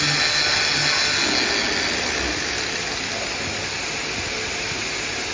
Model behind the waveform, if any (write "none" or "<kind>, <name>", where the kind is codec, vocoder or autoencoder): none